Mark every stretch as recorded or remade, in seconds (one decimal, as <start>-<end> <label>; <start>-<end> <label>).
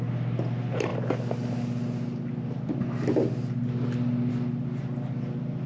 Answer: 0.0-5.7 recorded